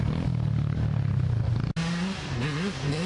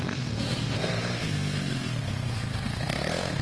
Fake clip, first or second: second